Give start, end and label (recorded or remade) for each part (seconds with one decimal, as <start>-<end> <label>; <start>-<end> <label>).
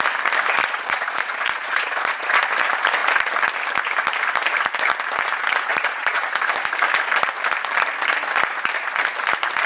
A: 0.0-0.6 recorded; 0.6-2.4 remade; 2.4-5.7 recorded; 5.7-6.2 remade; 6.2-9.7 recorded